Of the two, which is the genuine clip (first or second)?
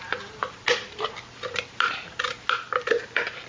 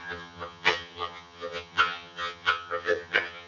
first